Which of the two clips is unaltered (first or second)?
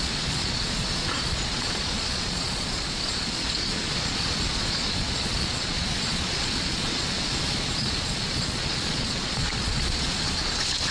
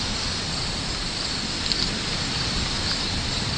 second